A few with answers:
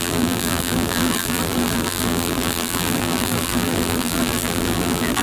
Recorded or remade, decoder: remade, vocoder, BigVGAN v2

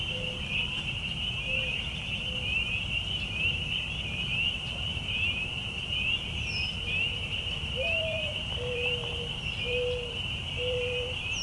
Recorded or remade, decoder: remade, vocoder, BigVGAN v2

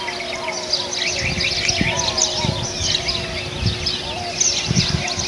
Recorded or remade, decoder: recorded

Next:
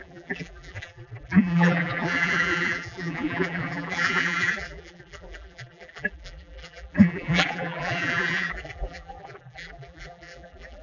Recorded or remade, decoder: remade, vocoder, BigVGAN v2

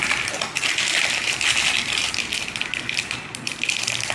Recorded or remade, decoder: remade, vocoder, BigVGAN v2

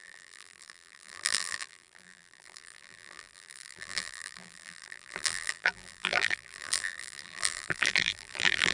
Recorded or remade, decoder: remade, vocoder, BigVGAN v2